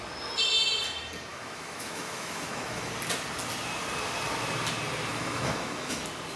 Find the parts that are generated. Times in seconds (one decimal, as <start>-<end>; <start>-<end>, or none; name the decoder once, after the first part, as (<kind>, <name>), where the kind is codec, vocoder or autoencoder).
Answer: 1.3-2.9 (autoencoder, DAC-VAE); 5.1-6.0